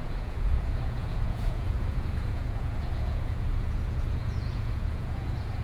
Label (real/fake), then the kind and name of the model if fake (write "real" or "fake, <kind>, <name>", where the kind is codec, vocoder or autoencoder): fake, vocoder, Vocos